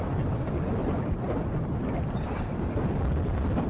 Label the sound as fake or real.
real